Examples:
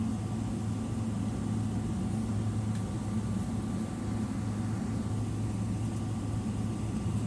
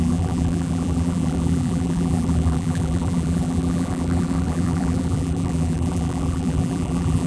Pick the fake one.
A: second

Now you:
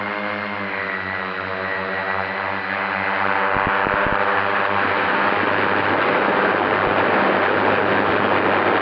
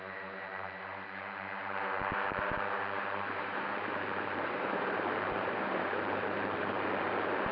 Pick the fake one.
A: second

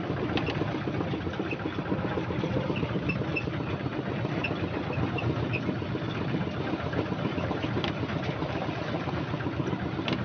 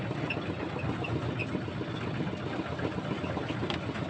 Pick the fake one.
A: first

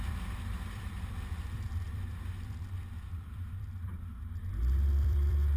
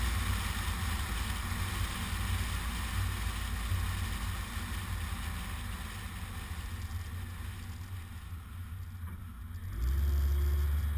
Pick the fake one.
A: first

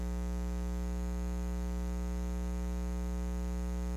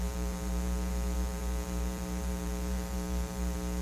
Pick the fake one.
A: second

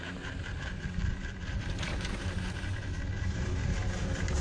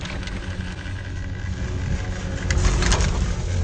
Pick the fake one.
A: first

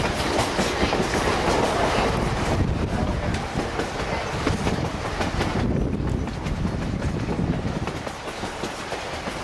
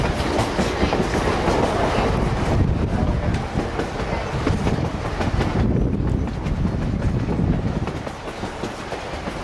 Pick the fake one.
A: first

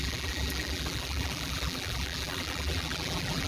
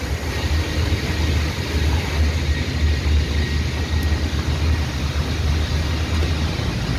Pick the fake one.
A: first